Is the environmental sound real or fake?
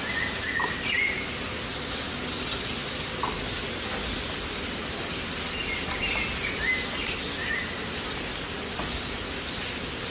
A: real